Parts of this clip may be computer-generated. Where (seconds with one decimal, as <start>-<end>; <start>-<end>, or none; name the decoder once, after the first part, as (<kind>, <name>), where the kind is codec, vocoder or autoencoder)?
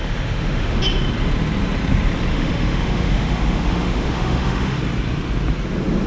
0.0-0.8 (autoencoder, DAC-VAE); 2.3-4.8